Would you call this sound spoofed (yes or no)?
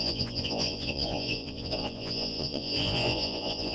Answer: yes